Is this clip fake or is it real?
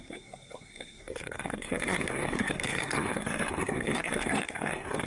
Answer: fake